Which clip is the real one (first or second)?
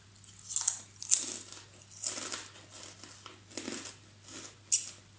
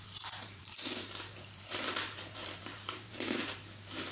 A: first